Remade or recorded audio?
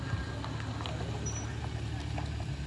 recorded